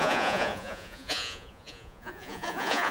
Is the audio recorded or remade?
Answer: remade